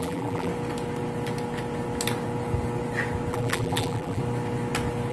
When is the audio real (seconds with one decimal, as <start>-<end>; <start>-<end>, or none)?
0.5-3.3; 4.2-5.1